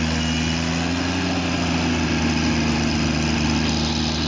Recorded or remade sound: recorded